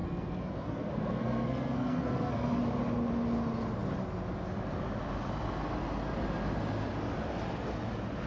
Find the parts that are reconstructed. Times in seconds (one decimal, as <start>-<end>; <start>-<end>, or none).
0.0-2.6